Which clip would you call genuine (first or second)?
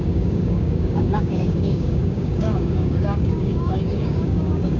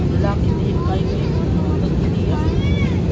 second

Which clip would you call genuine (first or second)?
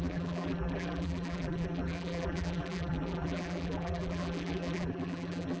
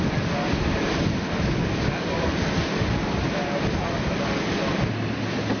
second